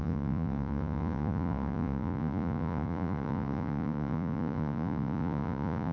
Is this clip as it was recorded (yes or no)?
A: no